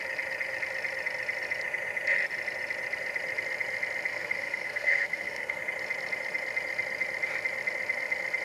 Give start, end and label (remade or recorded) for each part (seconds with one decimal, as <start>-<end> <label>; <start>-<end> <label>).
0.0-4.1 recorded; 4.1-5.6 remade; 5.6-8.4 recorded